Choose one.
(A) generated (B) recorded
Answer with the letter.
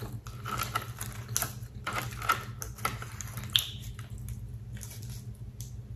B